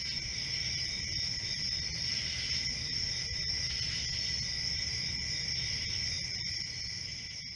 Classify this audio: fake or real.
real